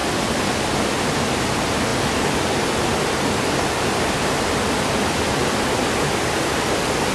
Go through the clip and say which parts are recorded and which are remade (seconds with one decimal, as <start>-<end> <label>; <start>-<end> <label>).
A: 0.0-7.1 recorded